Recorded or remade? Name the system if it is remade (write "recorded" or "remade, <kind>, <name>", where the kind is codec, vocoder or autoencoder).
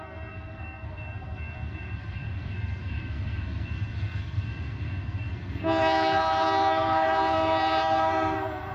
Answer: remade, codec, SNAC